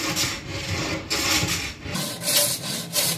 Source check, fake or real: real